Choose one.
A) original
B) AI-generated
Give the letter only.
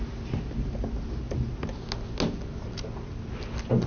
A